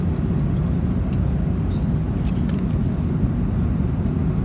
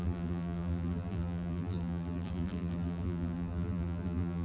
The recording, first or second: first